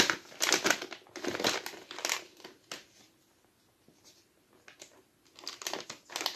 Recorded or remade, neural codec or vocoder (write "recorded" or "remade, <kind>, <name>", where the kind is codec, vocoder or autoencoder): recorded